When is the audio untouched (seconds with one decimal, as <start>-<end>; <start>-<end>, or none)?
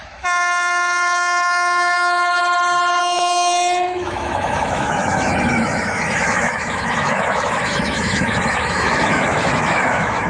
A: 2.4-3.0